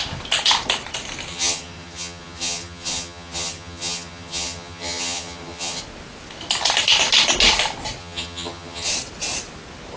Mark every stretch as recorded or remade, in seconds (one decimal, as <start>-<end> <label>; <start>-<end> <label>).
0.0-1.3 recorded; 1.3-5.8 remade; 5.8-8.0 recorded; 8.0-8.9 remade; 8.9-10.0 recorded